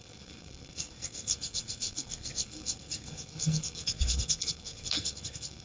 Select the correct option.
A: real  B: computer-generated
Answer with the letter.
B